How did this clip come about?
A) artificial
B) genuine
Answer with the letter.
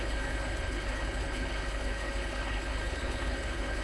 A